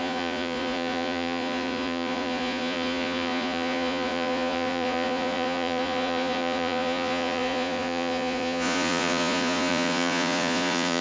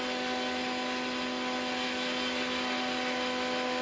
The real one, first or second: second